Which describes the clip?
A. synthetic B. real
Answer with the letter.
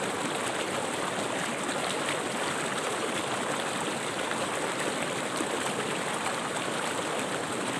B